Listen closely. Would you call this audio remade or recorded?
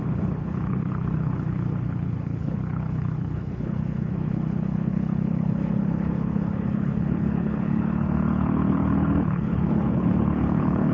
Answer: remade